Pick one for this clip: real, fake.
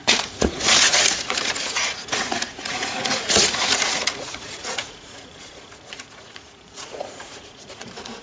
fake